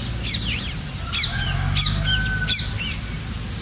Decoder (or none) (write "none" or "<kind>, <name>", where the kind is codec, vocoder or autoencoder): none